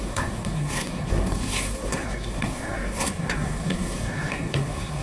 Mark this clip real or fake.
fake